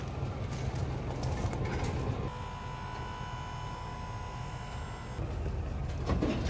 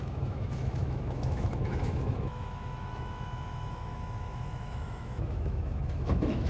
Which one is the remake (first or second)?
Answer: second